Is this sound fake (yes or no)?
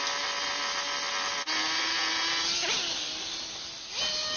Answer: no